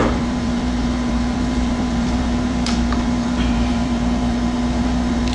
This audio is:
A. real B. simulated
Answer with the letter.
B